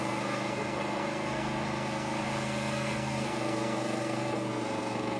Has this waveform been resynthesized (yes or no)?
yes